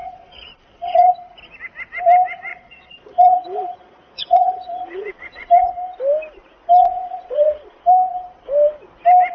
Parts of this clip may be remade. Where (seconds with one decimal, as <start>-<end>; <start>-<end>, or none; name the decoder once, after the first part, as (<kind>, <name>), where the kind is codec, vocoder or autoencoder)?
0.0-1.1 (vocoder, Vocos); 2.5-5.7; 6.8-7.8